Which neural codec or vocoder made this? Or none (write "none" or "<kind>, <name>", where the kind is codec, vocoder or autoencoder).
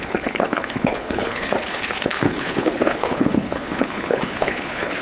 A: codec, HILCodec